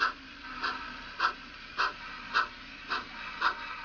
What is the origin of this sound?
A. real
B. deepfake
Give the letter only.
A